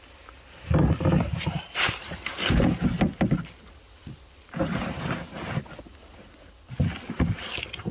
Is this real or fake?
real